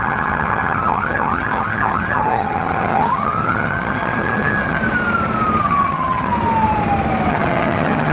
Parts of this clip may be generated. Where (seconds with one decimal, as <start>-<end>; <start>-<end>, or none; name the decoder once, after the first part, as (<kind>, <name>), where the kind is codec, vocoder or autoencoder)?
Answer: 0.0-4.8 (vocoder, HiFi-GAN); 5.6-6.3; 7.3-8.1